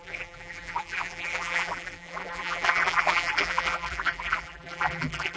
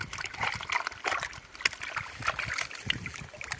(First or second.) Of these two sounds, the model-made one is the first